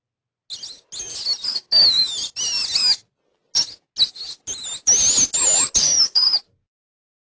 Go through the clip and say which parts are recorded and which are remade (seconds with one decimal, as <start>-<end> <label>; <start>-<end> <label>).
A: 0.0-1.5 recorded; 1.5-2.1 remade; 2.1-5.8 recorded; 5.8-6.4 remade; 6.4-7.2 recorded